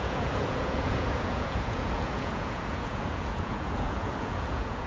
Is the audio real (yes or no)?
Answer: no